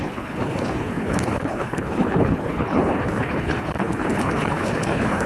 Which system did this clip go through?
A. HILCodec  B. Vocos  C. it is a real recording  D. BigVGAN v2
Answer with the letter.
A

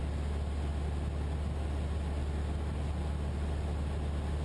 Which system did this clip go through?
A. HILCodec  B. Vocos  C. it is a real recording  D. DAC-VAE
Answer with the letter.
C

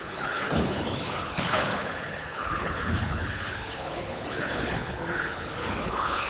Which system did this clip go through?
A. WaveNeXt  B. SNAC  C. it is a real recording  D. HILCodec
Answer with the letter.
D